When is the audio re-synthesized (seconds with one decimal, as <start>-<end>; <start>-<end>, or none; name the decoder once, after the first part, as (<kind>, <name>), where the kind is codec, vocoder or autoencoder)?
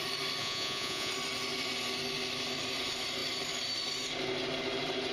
0.4-1.1 (vocoder, Vocos)